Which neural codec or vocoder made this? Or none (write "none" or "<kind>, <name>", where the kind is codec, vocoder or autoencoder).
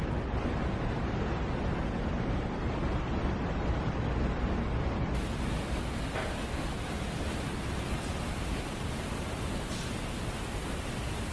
none